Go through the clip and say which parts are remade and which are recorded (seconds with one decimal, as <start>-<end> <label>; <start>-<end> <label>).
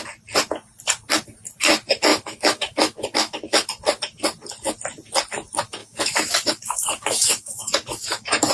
0.0-2.1 recorded; 2.1-3.7 remade; 3.7-5.8 recorded; 5.8-8.5 remade